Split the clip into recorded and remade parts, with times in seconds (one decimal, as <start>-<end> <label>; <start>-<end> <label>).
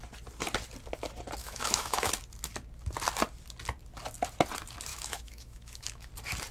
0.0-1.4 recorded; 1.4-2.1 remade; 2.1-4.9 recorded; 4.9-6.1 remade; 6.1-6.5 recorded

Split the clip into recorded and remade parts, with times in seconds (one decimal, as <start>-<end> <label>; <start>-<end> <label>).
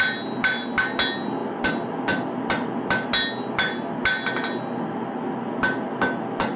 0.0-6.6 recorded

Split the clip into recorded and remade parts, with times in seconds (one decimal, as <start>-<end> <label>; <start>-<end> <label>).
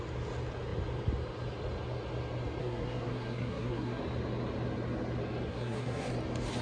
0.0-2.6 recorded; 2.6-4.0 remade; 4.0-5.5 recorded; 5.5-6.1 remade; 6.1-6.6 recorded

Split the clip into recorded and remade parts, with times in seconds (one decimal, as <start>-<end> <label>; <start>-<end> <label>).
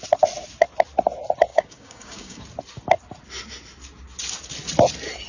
0.0-1.5 recorded; 1.5-2.4 remade; 2.4-5.3 recorded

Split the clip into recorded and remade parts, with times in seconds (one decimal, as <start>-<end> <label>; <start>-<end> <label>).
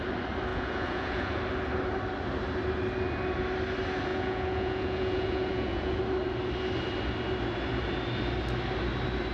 0.0-0.5 recorded; 0.5-1.4 remade; 1.4-4.1 recorded; 4.1-6.0 remade; 6.0-9.3 recorded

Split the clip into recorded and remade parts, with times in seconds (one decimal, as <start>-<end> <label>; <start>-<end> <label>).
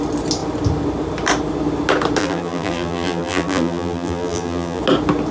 0.0-2.2 recorded; 2.2-4.8 remade; 4.8-5.3 recorded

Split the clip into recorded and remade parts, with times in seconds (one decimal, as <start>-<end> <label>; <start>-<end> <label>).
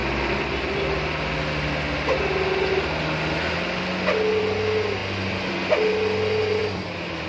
0.0-5.0 recorded; 5.0-5.5 remade; 5.5-6.6 recorded; 6.6-7.3 remade